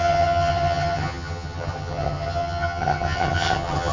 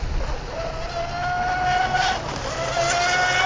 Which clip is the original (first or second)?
second